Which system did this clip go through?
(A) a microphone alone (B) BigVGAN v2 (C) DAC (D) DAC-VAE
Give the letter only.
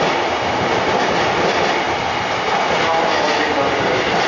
A